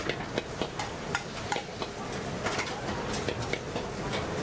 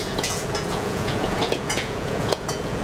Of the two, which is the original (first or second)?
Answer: first